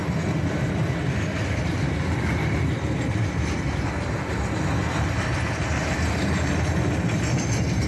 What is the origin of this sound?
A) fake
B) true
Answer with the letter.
B